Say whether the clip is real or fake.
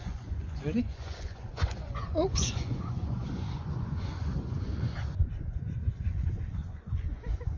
fake